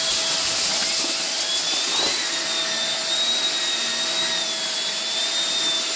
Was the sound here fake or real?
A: real